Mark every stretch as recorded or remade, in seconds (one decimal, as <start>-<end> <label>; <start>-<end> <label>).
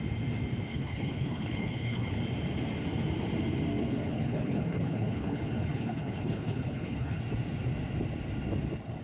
0.0-0.7 recorded; 0.7-2.2 remade; 2.2-3.8 recorded; 3.8-7.2 remade; 7.2-9.0 recorded